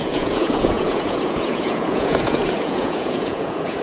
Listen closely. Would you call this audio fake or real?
fake